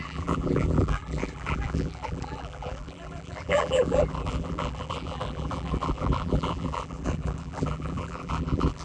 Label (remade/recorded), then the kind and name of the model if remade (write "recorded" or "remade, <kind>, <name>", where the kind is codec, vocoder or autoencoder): remade, vocoder, BigVGAN v2